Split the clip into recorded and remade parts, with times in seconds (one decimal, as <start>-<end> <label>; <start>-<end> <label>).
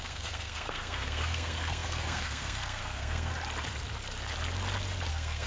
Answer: 0.0-3.3 remade; 3.3-5.1 recorded; 5.1-5.5 remade